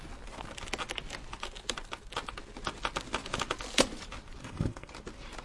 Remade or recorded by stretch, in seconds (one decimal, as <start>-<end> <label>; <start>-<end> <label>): 0.0-4.4 recorded; 4.4-4.9 remade; 4.9-5.4 recorded